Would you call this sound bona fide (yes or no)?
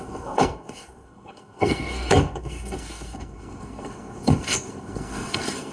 no